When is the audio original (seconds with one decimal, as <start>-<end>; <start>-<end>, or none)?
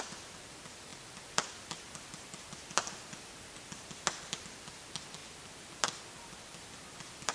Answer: 0.0-7.3